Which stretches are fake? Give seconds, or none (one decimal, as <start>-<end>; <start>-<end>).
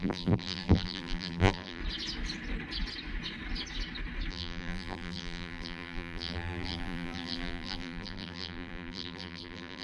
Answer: 0.0-1.8; 4.3-9.8